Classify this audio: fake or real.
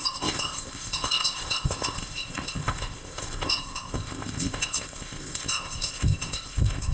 fake